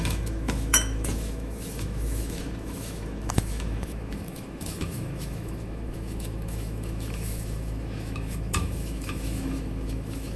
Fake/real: fake